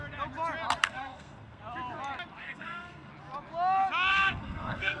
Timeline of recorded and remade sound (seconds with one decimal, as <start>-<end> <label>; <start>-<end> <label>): 0.0-0.8 recorded; 0.8-1.6 remade; 1.6-2.4 recorded; 2.4-3.1 remade; 3.1-4.1 recorded; 4.1-5.0 remade